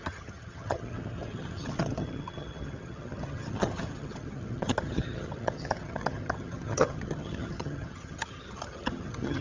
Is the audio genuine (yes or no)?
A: no